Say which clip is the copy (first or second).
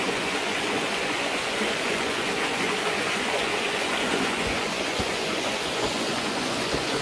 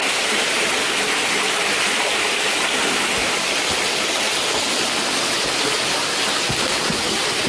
first